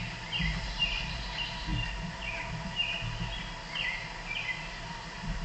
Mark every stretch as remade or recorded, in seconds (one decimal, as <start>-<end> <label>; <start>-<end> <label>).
0.0-1.7 remade; 1.7-4.9 recorded; 4.9-5.4 remade